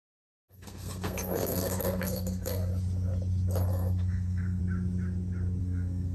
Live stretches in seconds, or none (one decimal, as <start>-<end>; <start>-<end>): 2.7-3.7; 4.6-5.6

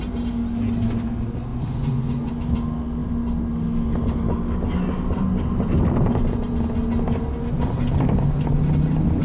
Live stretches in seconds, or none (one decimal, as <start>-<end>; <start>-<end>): 0.0-1.5; 2.3-9.2